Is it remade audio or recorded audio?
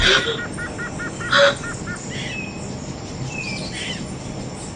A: recorded